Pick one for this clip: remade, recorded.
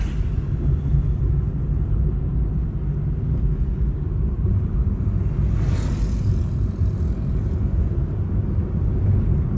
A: recorded